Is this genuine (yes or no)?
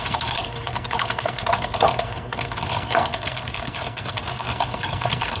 no